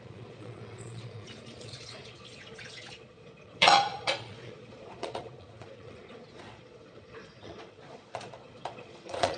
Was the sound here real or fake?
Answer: fake